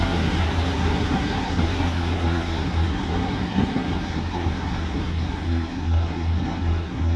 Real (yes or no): no